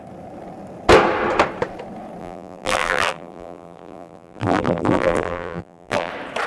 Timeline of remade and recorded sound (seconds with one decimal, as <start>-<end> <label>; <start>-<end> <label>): 0.0-2.2 recorded; 2.2-6.1 remade; 6.1-6.5 recorded

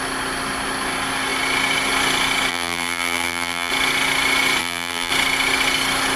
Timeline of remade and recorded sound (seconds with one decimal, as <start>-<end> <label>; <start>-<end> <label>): 0.0-2.5 recorded; 2.5-3.7 remade; 3.7-4.6 recorded; 4.6-5.1 remade; 5.1-6.2 recorded

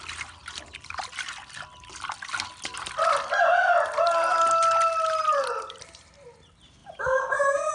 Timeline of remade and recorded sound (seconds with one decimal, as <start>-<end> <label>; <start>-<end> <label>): 0.0-6.8 recorded; 6.8-7.7 remade